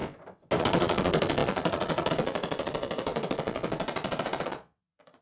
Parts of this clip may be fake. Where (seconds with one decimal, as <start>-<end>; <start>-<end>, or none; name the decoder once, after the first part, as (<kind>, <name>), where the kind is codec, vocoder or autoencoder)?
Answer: 0.6-5.2 (vocoder, Vocos)